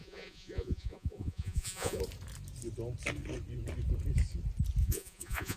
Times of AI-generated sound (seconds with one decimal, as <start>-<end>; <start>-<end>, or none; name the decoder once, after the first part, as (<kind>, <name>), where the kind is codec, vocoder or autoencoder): 0.0-2.0 (vocoder, Vocos); 4.8-5.6